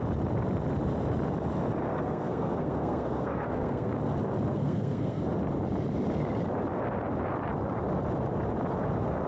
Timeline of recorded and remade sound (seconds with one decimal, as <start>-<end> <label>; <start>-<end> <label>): 0.0-1.9 recorded; 1.9-3.9 remade; 3.9-4.5 recorded; 4.5-5.2 remade; 5.2-9.3 recorded